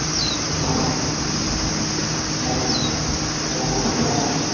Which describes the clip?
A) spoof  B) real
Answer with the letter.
B